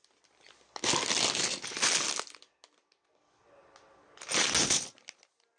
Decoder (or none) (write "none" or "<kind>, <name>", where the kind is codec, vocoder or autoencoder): none